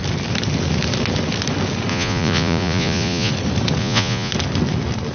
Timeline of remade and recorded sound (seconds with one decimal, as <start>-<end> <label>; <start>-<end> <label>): 0.0-1.9 recorded; 1.9-3.3 remade; 3.3-3.8 recorded; 3.8-4.3 remade; 4.3-5.1 recorded